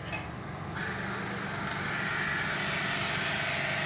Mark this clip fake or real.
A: real